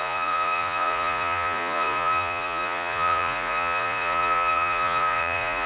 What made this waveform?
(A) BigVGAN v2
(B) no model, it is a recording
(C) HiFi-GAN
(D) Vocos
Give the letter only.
D